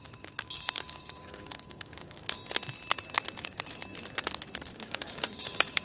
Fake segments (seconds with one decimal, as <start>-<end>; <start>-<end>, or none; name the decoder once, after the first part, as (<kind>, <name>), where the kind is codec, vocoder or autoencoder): 0.0-2.4 (codec, DAC); 3.4-3.8; 4.7-5.8